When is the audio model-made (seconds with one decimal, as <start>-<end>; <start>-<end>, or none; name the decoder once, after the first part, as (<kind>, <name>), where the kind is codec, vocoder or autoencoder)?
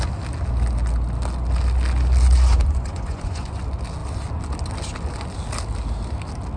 2.5-3.6 (vocoder, Vocos)